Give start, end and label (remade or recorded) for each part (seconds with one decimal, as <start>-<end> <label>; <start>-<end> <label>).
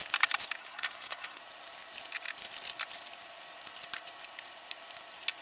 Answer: 0.0-0.6 recorded; 0.6-1.4 remade; 1.4-5.4 recorded